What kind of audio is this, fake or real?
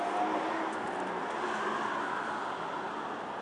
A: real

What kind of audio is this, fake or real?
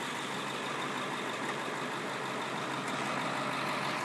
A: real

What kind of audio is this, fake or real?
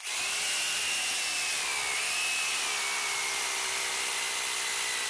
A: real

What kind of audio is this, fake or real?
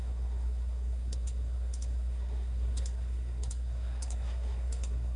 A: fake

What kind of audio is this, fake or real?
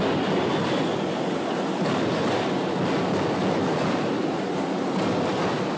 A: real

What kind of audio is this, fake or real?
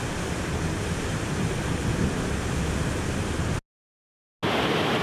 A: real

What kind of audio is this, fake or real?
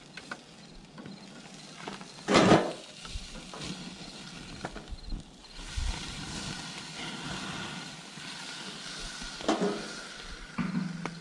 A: real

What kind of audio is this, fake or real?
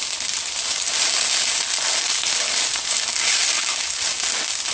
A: real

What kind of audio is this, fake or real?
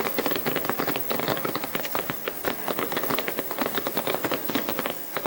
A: fake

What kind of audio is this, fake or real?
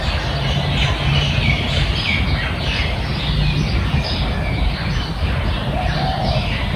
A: real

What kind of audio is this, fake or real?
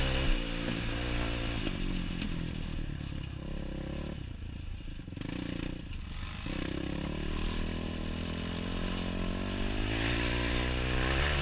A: real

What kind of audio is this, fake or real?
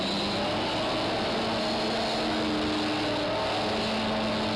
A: real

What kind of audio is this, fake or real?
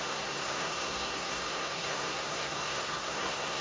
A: fake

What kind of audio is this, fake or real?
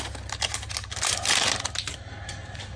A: real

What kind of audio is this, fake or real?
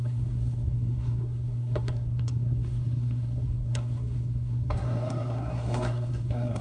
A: fake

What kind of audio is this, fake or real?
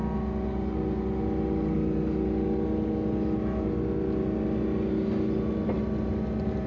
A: real